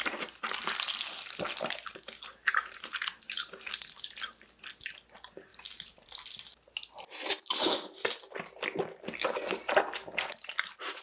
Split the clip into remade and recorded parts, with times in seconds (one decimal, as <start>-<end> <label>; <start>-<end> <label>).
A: 0.0-11.0 recorded